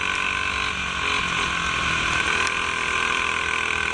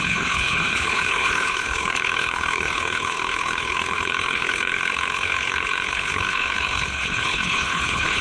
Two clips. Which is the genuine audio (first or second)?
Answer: first